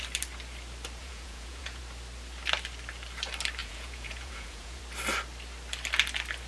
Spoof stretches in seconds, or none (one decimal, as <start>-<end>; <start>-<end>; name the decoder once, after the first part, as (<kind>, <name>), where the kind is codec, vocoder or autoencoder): 1.0-1.8 (vocoder, Vocos); 3.6-4.8